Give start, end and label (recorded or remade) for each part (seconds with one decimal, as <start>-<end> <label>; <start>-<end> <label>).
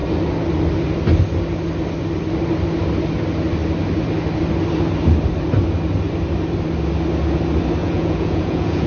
0.0-7.8 recorded; 7.8-8.9 remade